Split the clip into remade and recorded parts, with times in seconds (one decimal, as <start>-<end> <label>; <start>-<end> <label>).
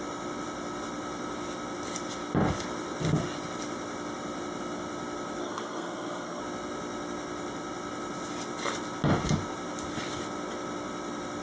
0.0-5.4 recorded; 5.4-6.4 remade; 6.4-11.4 recorded